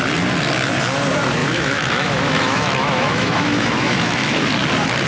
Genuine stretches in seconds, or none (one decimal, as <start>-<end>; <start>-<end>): 0.0-1.4; 4.5-5.1